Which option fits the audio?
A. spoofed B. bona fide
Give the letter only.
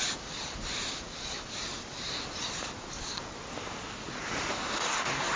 B